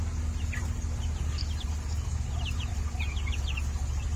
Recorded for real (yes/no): yes